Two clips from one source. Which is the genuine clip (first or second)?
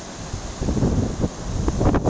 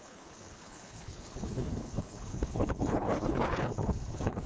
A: first